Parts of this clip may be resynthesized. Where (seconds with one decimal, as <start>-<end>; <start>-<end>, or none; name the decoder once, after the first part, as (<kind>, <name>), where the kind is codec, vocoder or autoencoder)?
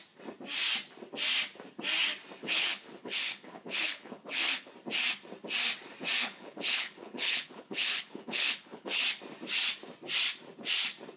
2.4-4.7 (codec, HILCodec); 6.2-9.0